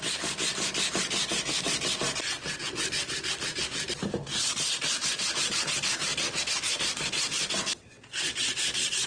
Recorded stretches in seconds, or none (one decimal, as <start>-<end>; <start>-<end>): 0.0-9.1